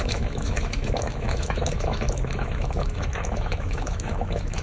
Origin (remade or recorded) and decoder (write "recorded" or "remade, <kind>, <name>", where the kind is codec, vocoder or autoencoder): remade, autoencoder, DAC-VAE